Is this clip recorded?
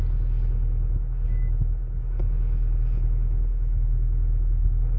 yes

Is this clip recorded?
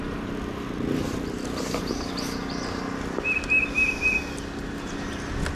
yes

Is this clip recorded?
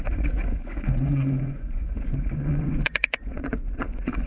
no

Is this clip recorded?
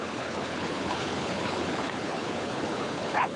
no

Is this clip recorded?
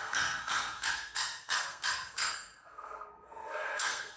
no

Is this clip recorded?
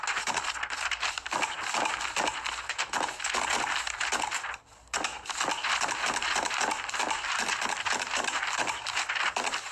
yes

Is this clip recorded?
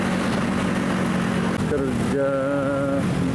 yes